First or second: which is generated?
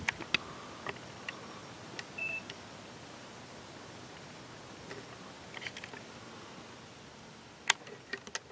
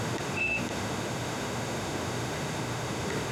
second